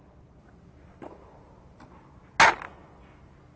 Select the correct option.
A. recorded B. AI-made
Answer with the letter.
A